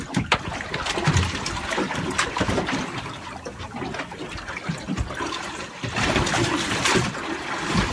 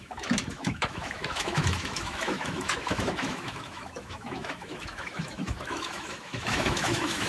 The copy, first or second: second